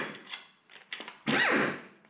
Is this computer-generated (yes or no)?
no